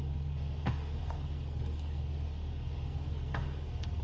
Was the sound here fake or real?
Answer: fake